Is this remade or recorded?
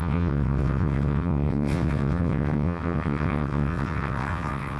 remade